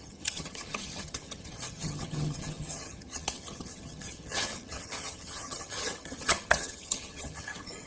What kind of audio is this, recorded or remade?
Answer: remade